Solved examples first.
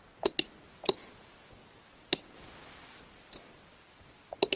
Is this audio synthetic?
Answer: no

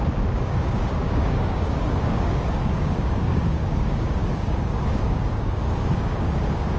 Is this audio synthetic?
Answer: yes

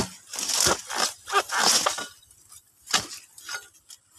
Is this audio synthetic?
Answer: no